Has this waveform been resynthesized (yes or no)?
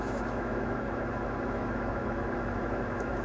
yes